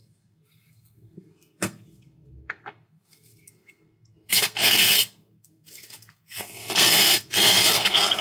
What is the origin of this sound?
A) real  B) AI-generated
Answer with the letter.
B